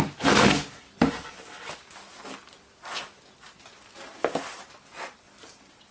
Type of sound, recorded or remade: recorded